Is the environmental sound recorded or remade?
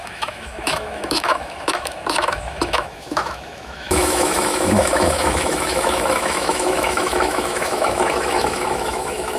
remade